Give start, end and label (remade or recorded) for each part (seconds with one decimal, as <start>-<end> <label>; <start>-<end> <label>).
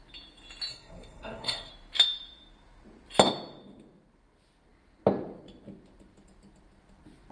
0.0-0.7 recorded; 0.7-1.7 remade; 1.7-7.3 recorded